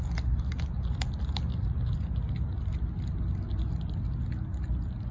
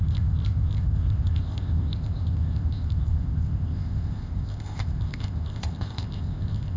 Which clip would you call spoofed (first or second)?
second